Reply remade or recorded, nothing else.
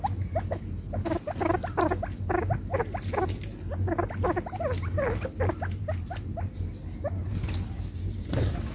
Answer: recorded